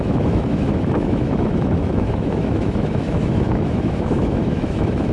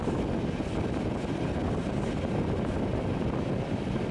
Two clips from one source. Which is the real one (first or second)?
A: second